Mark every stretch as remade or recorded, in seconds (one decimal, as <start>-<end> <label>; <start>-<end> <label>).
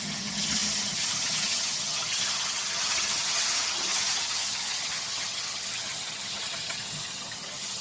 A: 0.0-7.8 remade